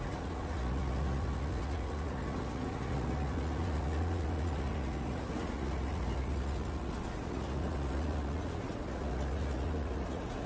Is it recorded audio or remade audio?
remade